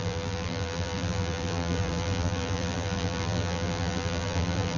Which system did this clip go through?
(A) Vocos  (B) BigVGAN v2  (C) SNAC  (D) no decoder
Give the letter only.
B